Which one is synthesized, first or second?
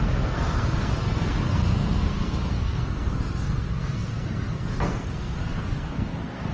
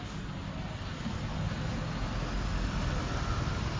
first